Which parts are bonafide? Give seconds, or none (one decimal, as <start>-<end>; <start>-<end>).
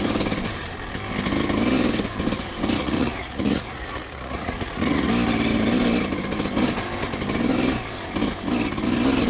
0.0-2.8; 5.1-9.3